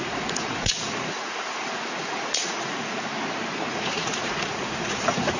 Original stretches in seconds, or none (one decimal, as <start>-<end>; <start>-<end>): 3.1-3.7